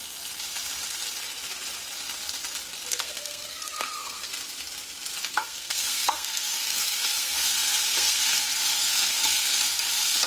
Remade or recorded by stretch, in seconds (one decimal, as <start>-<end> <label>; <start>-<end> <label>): 0.0-2.9 recorded; 2.9-4.3 remade; 4.3-5.3 recorded; 5.3-10.3 remade